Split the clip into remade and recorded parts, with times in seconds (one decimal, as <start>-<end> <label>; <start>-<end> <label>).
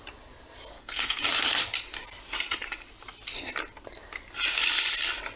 0.0-0.7 recorded; 0.7-1.2 remade; 1.2-5.4 recorded